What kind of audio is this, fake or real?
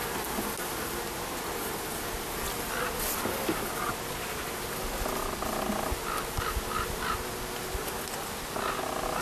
real